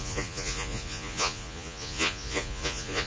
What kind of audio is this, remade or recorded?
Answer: remade